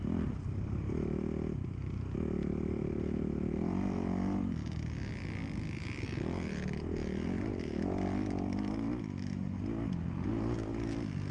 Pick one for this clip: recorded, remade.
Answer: recorded